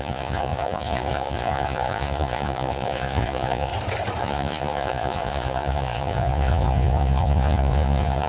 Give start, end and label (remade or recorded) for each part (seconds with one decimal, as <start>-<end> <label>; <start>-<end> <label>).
0.0-3.7 remade; 3.7-4.2 recorded; 4.2-8.3 remade